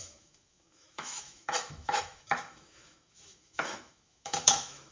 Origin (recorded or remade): remade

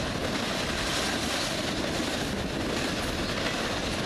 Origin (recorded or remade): recorded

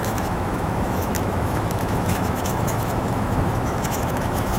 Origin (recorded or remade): remade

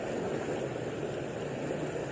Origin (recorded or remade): recorded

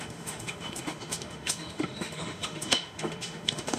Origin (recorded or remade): remade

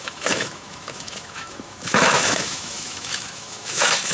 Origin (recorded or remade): remade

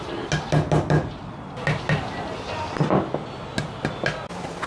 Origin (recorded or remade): recorded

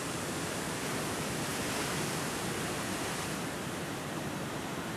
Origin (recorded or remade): recorded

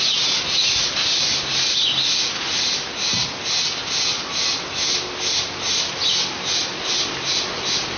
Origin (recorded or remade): recorded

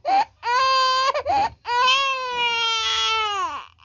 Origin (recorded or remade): recorded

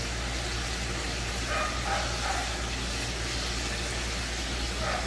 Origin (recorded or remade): recorded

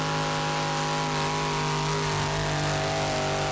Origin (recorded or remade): recorded